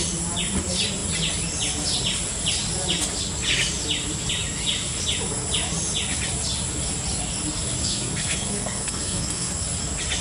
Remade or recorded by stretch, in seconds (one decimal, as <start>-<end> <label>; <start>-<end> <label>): 0.0-7.8 recorded; 7.8-9.5 remade; 9.5-10.2 recorded